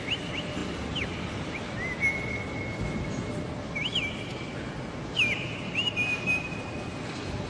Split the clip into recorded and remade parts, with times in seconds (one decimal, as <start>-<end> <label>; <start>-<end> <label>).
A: 0.0-7.5 recorded